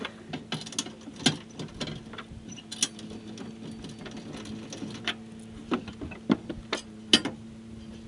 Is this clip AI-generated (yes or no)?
no